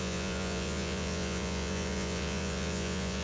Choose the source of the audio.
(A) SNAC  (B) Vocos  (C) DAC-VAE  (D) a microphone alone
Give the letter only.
B